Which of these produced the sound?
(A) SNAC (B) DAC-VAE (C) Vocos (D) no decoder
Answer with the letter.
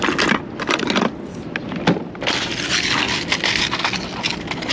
D